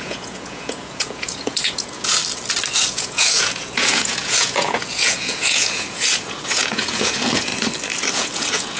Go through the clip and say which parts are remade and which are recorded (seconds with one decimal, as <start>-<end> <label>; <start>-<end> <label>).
0.0-2.2 remade; 2.2-2.8 recorded; 2.8-7.5 remade; 7.5-8.1 recorded; 8.1-8.8 remade